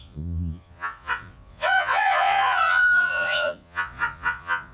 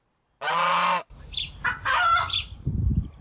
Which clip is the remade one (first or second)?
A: first